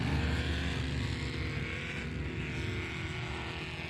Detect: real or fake real